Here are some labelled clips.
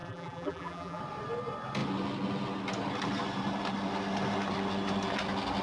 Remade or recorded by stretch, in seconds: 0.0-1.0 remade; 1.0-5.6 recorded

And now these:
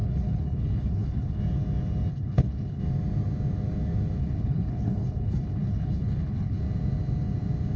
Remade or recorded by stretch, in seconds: 0.0-1.4 remade; 1.4-2.1 recorded; 2.1-2.8 remade; 2.8-4.2 recorded; 4.2-6.6 remade; 6.6-7.8 recorded

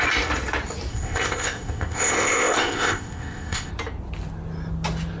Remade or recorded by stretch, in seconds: 0.0-0.9 recorded; 0.9-3.7 remade; 3.7-5.2 recorded

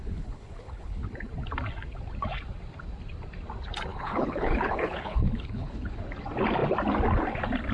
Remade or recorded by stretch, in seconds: 0.0-1.1 remade; 1.1-3.9 recorded; 3.9-6.0 remade; 6.0-7.7 recorded

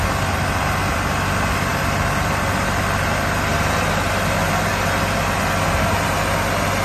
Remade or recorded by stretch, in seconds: 0.0-6.8 recorded